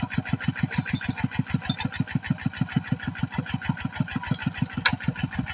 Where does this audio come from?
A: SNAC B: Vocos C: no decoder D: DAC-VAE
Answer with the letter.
C